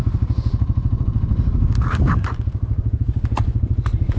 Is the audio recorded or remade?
remade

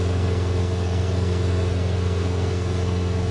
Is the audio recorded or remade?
remade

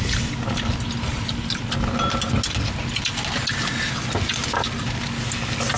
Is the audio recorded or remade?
recorded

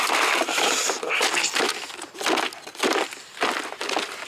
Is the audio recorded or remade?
recorded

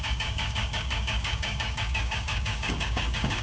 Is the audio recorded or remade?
remade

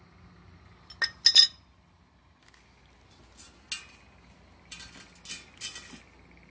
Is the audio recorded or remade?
recorded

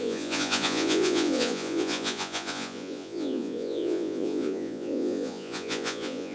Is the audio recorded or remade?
remade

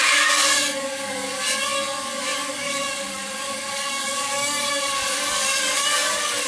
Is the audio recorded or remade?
remade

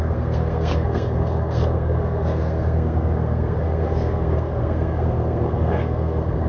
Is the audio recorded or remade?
remade